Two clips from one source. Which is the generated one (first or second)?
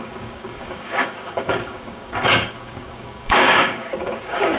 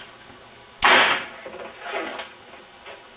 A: first